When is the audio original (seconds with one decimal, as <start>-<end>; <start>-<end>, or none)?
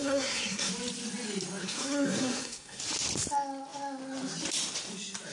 0.7-1.6; 2.8-5.3